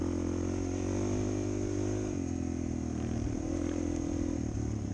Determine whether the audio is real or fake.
real